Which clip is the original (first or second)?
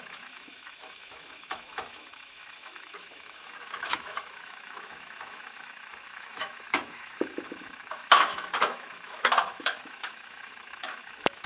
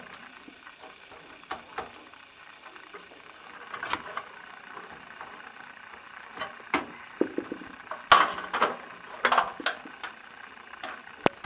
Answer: second